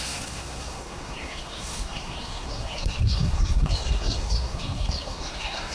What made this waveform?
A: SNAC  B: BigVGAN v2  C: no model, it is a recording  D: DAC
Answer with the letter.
A